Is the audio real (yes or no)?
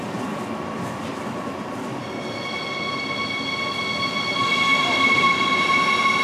yes